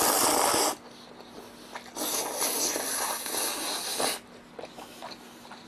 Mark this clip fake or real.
real